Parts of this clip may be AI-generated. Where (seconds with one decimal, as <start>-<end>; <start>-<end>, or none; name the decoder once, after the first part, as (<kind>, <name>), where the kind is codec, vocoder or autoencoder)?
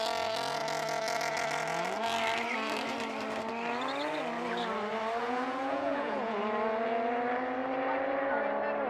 5.2-6.4 (vocoder, Vocos)